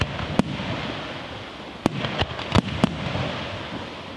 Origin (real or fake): real